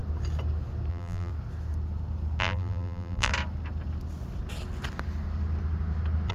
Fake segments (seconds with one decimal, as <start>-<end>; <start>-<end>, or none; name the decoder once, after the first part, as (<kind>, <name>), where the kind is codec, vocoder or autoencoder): 0.9-1.3 (vocoder, BigVGAN v2); 2.4-3.3